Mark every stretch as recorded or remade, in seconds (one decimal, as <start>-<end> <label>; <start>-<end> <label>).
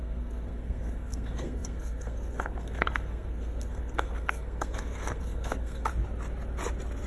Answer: 0.0-5.9 remade; 5.9-7.1 recorded